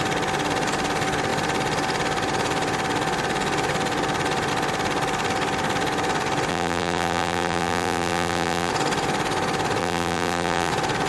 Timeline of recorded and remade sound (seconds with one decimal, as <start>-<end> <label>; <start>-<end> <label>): 0.0-6.5 recorded; 6.5-8.7 remade; 8.7-9.8 recorded; 9.8-10.7 remade; 10.7-11.1 recorded